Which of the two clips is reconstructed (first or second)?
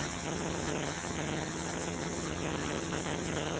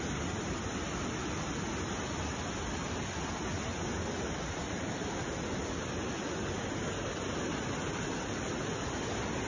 first